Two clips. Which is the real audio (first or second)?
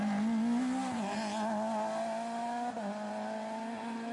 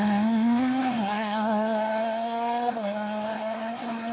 first